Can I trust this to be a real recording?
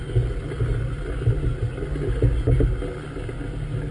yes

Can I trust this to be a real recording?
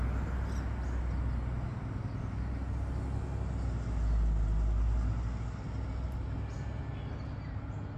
yes